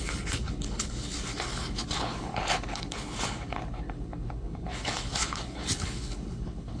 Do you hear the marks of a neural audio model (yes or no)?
yes